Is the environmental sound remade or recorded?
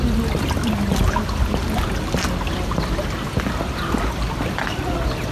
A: recorded